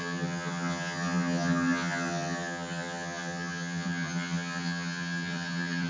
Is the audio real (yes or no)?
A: no